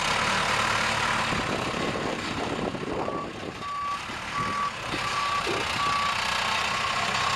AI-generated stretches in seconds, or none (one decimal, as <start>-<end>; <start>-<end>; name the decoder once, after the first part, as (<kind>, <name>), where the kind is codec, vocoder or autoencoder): 1.8-3.1 (vocoder, BigVGAN v2)